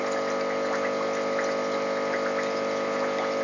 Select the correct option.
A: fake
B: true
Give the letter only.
B